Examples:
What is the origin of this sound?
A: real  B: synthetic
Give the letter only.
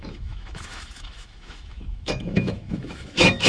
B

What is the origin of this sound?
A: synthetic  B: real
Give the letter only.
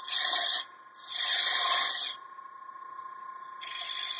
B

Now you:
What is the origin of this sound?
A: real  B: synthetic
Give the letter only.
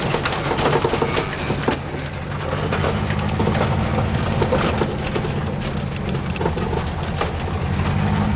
A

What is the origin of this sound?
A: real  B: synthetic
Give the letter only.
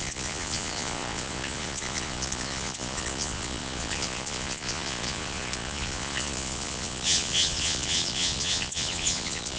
B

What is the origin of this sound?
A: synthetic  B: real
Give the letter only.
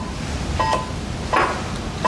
B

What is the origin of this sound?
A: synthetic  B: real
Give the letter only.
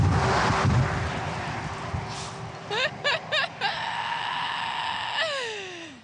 B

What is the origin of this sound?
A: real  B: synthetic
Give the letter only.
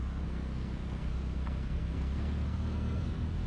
B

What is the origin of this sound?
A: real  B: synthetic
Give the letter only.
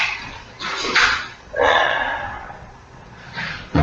B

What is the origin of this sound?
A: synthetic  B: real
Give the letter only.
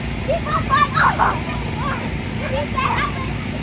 B